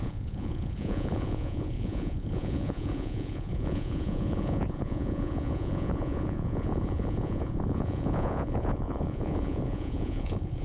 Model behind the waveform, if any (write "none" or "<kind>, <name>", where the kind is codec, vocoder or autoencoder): vocoder, Vocos